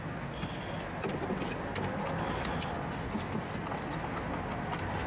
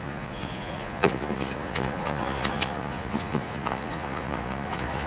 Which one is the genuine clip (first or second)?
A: first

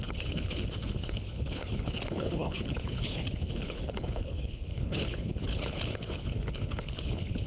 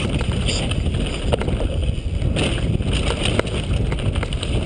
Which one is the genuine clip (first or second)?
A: second